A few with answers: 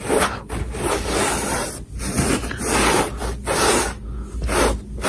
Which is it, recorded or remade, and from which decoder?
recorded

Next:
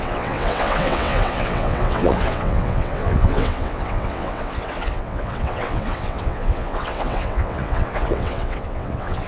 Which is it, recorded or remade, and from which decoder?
remade, vocoder, WaveNeXt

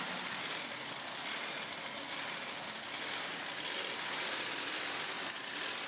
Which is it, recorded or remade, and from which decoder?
recorded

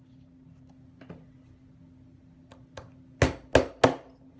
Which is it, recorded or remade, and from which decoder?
recorded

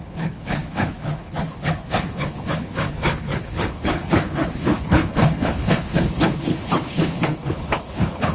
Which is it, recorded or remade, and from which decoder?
remade, codec, HILCodec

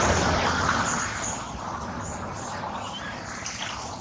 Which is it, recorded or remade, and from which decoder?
recorded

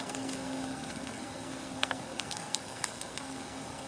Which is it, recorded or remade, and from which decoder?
remade, codec, SNAC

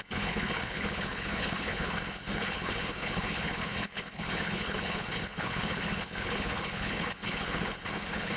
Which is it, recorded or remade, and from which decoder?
remade, codec, HILCodec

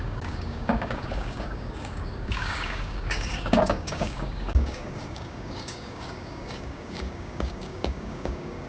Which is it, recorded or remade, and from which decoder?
remade, codec, DAC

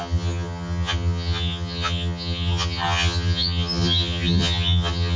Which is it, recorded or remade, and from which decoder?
remade, vocoder, HiFi-GAN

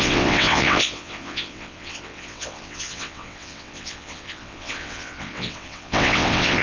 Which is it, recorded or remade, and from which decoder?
remade, vocoder, WaveNeXt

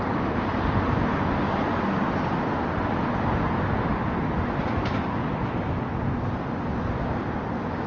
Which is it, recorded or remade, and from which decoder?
recorded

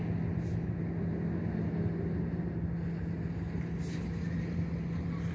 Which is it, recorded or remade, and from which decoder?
recorded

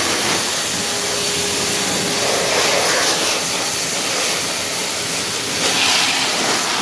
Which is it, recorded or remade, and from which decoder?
recorded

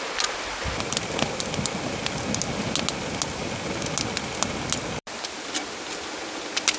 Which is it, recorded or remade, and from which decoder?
recorded